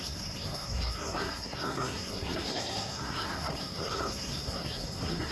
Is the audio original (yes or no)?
no